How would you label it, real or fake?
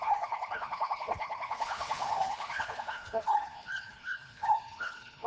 fake